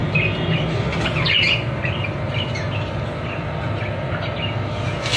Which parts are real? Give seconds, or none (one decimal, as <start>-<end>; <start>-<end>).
0.0-5.2